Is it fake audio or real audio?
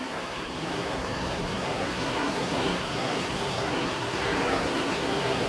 fake